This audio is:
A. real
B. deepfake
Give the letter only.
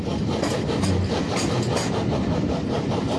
A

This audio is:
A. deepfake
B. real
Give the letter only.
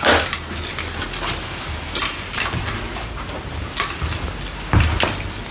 B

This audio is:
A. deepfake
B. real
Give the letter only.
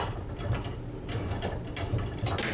B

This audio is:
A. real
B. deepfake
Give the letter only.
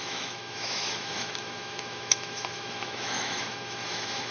B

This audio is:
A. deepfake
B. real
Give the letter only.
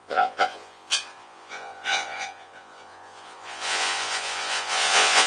A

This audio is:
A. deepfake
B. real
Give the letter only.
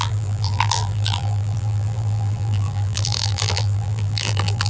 A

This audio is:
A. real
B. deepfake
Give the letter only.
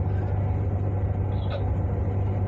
A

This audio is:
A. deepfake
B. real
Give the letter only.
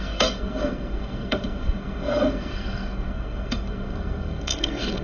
A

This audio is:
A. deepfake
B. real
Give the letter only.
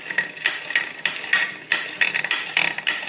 B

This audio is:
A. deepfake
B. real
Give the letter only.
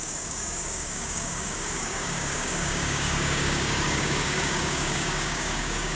A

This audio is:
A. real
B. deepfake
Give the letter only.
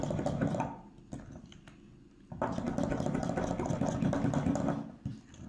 A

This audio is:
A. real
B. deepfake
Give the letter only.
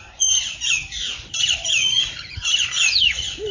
B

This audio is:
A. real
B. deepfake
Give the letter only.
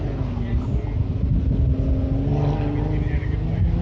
A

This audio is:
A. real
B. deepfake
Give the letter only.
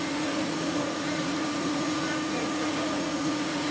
B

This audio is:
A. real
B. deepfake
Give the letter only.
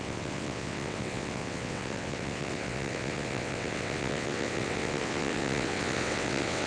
B